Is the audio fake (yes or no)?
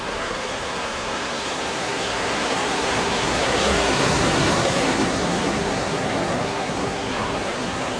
yes